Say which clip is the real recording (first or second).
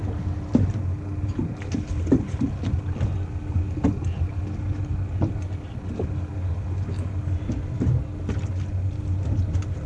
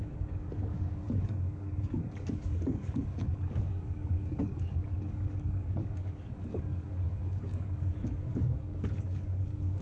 first